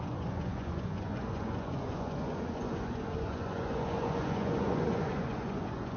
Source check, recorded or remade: remade